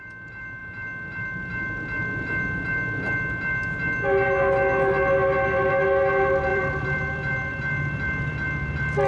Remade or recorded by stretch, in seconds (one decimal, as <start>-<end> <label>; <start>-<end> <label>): 0.0-6.5 recorded; 6.5-9.1 remade